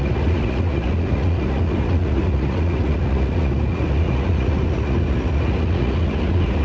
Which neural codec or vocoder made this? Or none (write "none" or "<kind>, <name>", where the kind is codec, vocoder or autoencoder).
vocoder, Vocos